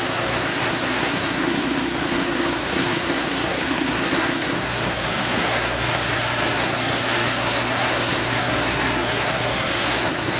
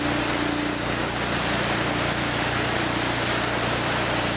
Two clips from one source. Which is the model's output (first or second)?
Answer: first